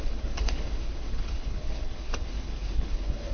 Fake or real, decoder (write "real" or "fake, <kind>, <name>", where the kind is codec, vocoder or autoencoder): fake, codec, HILCodec